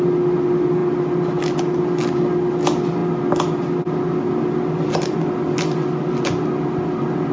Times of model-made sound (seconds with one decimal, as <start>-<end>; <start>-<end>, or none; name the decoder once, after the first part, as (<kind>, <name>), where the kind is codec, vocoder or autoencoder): none